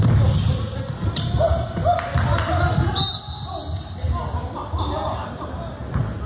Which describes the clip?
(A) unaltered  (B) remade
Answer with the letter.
A